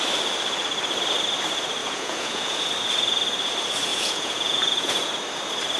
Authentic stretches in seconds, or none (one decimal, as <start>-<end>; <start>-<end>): 0.0-1.8; 2.6-3.9; 5.1-5.8